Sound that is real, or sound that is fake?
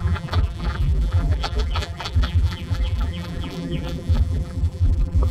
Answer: fake